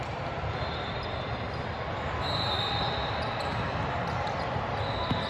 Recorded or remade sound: recorded